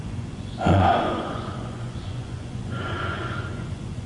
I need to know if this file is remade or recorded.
remade